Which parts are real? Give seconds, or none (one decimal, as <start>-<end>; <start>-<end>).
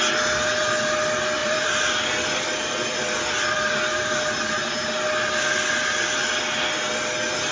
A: 0.0-1.4; 4.9-7.5